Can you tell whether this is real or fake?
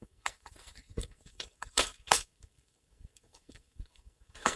fake